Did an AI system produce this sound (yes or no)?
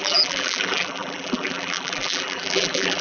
yes